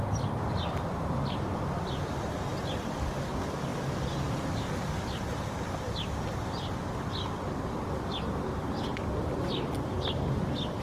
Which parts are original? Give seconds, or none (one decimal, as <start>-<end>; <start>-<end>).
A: 0.0-8.9; 9.9-10.8